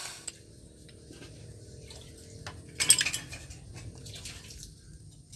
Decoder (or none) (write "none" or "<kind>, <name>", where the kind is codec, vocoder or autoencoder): none